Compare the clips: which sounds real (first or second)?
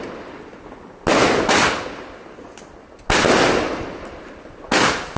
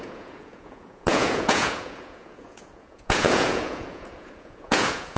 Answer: first